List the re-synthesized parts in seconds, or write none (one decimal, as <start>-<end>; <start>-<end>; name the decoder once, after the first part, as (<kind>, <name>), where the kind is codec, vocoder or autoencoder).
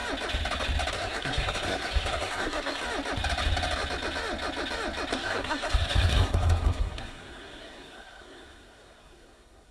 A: 0.9-2.8 (codec, SNAC); 5.1-9.7